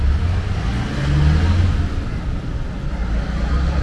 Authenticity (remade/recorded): recorded